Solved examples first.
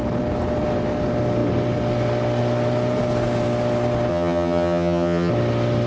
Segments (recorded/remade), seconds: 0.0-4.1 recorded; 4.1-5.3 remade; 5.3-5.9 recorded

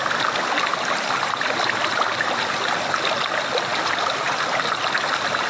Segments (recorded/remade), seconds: 0.0-5.5 recorded

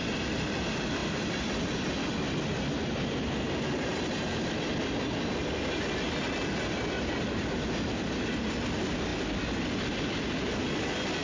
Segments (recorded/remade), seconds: 0.0-11.2 recorded

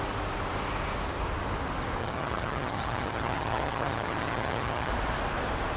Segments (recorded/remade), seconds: 0.0-2.0 recorded; 2.0-4.9 remade; 4.9-5.8 recorded

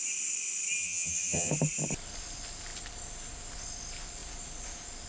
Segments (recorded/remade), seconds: 0.0-0.8 recorded; 0.8-1.5 remade; 1.5-5.1 recorded

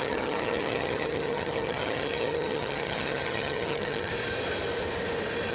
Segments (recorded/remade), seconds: 0.0-4.1 remade; 4.1-5.5 recorded

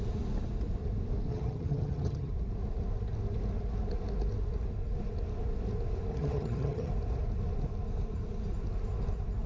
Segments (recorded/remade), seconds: 0.0-1.3 recorded; 1.3-2.3 remade; 2.3-6.1 recorded; 6.1-6.9 remade; 6.9-9.5 recorded